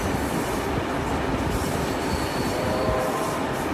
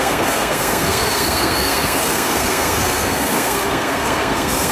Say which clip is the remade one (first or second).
second